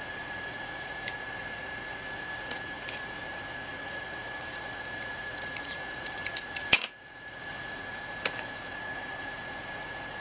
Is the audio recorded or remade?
remade